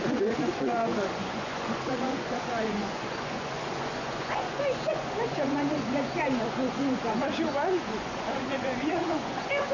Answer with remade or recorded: remade